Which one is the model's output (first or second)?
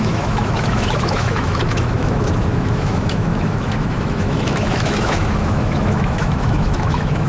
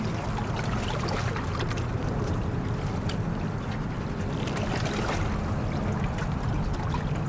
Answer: first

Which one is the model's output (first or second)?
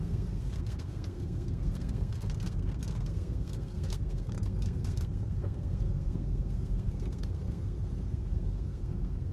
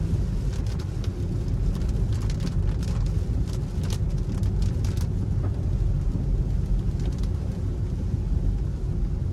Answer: first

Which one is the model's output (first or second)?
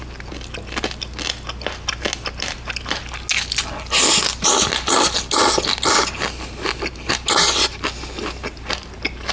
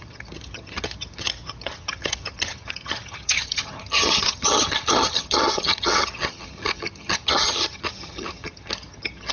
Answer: second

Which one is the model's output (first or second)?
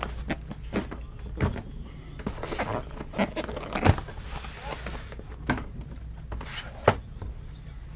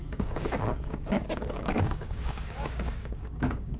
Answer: second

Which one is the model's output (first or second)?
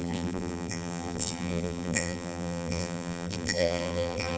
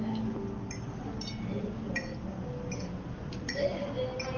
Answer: first